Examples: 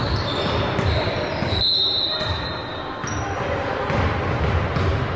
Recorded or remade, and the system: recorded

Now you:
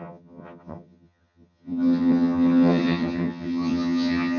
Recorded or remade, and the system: remade, vocoder, HiFi-GAN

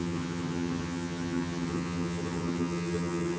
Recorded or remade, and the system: remade, vocoder, HiFi-GAN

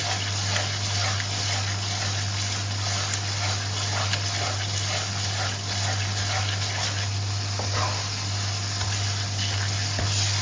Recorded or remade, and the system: recorded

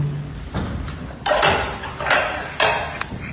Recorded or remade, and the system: recorded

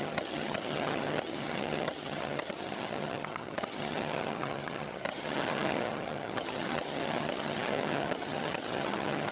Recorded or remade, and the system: remade, vocoder, HiFi-GAN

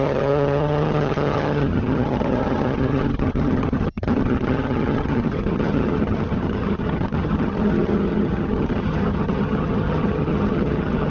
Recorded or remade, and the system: remade, vocoder, HiFi-GAN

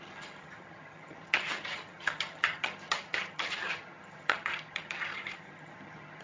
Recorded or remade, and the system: remade, vocoder, HiFi-GAN